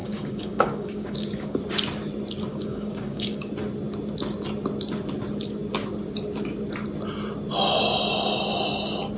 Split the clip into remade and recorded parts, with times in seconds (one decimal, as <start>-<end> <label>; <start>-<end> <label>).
0.0-1.6 remade; 1.6-2.5 recorded; 2.5-3.5 remade; 3.5-9.2 recorded